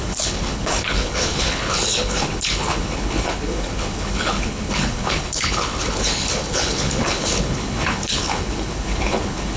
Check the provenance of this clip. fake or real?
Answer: fake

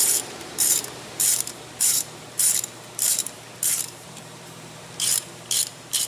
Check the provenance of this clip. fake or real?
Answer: fake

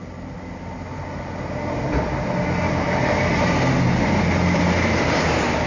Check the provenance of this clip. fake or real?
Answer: real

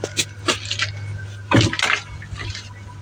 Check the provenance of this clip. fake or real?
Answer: real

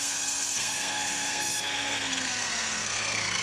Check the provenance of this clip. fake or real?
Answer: fake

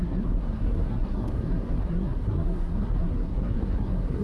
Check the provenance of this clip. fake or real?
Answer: fake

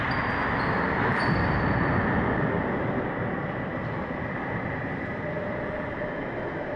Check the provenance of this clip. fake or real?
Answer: real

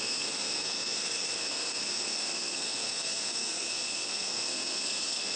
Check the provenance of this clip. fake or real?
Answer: fake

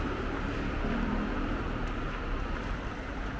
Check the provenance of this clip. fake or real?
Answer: real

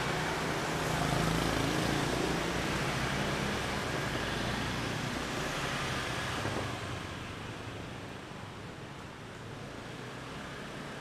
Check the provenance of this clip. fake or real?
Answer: real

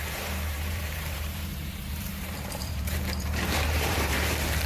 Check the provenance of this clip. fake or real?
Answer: fake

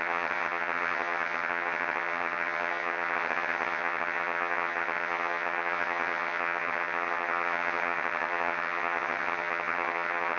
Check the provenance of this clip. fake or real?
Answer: fake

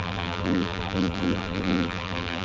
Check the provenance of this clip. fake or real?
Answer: fake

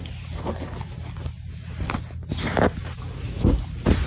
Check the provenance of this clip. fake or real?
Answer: real